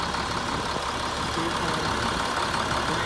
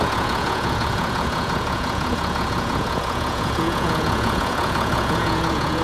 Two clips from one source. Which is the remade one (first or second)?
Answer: second